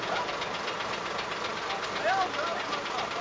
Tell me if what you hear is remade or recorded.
recorded